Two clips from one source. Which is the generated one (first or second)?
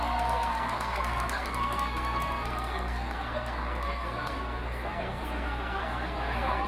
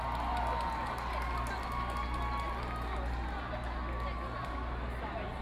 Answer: first